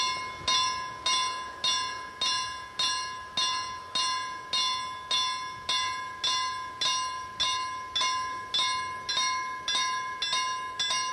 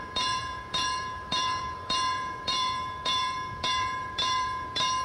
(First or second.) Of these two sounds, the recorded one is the first